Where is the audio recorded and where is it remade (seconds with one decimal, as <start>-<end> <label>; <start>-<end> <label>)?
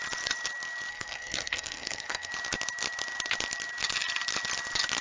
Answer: 0.0-0.9 recorded; 0.9-2.3 remade; 2.3-5.0 recorded